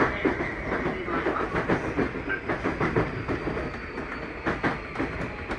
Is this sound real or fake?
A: real